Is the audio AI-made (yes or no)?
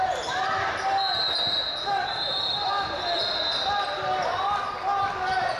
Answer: no